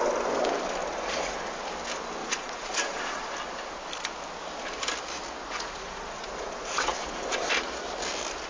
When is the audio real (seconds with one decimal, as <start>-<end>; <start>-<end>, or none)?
0.0-0.8; 1.6-2.2; 3.3-5.4; 7.4-8.5